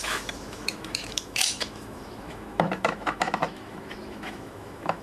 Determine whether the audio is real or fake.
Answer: fake